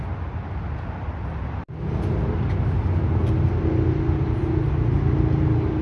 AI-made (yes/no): no